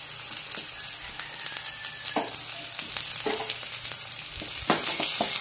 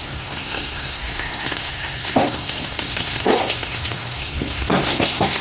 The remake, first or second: second